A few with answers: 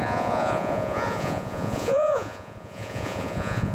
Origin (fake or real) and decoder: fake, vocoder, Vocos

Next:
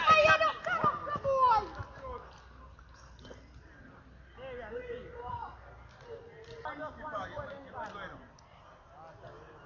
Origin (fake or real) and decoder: real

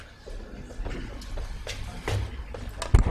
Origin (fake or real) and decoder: real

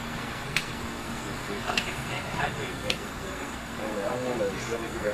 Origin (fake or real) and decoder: fake, codec, SNAC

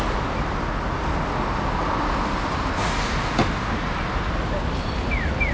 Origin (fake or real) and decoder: real